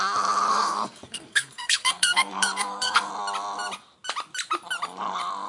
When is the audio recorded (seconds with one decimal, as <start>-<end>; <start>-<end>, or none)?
0.0-0.5; 3.1-5.5

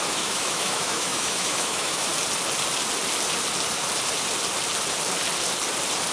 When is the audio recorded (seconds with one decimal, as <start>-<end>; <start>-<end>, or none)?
2.1-6.1

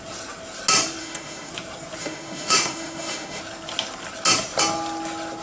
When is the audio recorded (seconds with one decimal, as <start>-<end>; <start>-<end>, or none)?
0.0-1.0; 1.5-2.0; 3.4-5.4

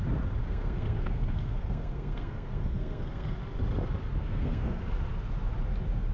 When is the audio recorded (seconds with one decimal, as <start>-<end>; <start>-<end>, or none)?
0.0-0.4; 3.4-4.2; 4.8-6.1

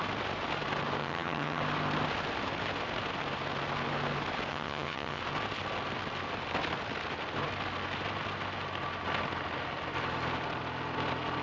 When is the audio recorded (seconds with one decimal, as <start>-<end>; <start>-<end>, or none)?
0.0-1.0; 1.6-4.5; 5.2-11.4

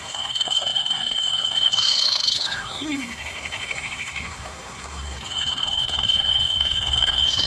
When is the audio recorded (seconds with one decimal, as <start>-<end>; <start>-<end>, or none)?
none

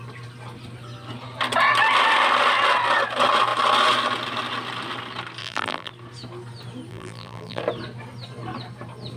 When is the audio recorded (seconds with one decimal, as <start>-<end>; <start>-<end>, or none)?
0.0-5.4; 5.9-6.9; 7.6-9.2

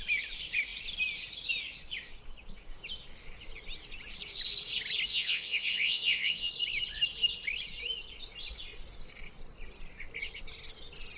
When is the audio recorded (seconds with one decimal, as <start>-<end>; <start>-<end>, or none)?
0.0-5.1; 6.5-11.2